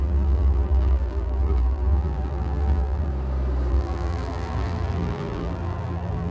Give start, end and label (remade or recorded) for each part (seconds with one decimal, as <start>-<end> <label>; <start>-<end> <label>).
0.0-3.1 remade; 3.1-3.7 recorded; 3.7-6.3 remade